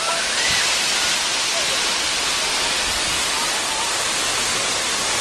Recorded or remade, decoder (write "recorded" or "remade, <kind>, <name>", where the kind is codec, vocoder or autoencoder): recorded